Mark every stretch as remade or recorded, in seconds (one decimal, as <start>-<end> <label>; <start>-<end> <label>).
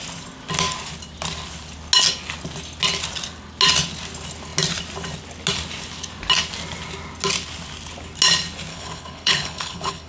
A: 0.0-8.7 recorded; 8.7-10.1 remade